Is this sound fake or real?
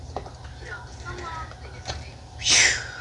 real